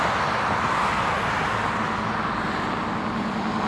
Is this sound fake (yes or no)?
no